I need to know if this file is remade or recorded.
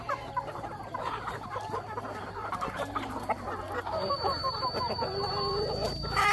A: remade